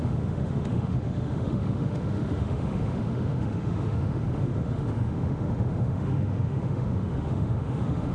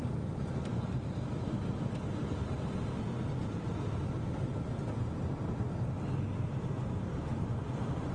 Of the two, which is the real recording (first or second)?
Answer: second